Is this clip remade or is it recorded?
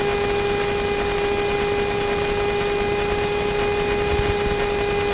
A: recorded